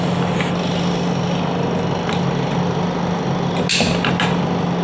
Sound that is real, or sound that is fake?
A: real